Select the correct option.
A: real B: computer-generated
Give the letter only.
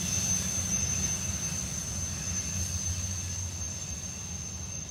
A